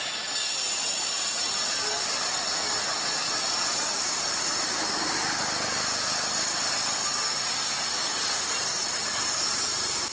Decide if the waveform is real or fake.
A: real